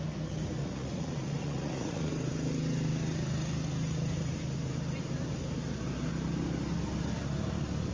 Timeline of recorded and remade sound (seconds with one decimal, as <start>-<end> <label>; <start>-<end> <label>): 0.0-0.6 recorded; 0.6-2.1 remade; 2.1-7.9 recorded